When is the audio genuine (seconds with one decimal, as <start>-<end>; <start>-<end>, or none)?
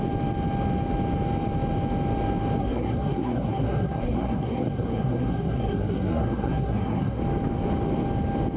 0.0-2.6; 7.2-8.6